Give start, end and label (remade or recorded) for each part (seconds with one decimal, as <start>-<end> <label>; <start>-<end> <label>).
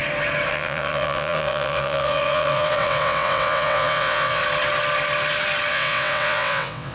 0.0-0.5 recorded; 0.5-4.4 remade; 4.4-5.7 recorded; 5.7-6.9 remade